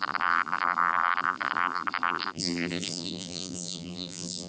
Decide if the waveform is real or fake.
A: fake